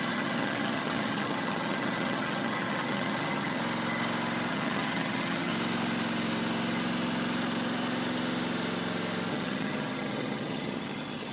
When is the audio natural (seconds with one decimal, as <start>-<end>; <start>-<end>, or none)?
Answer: 3.6-4.5; 5.5-9.3